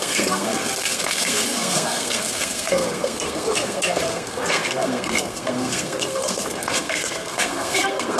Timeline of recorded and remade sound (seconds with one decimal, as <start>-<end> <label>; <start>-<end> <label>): 0.0-8.2 remade